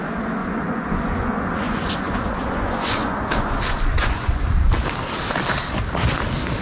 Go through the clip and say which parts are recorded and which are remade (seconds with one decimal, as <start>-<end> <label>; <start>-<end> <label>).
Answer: 0.0-0.4 recorded; 0.4-4.4 remade; 4.4-6.6 recorded